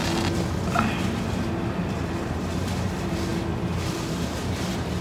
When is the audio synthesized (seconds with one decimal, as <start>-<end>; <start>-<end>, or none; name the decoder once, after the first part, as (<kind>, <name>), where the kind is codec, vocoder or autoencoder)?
1.7-3.3 (vocoder, BigVGAN v2); 3.8-5.0